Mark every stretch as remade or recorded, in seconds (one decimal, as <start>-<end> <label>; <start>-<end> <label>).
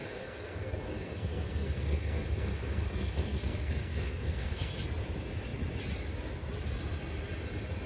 0.0-4.7 remade; 4.7-7.9 recorded